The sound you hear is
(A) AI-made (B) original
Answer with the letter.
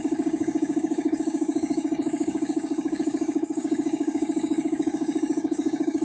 A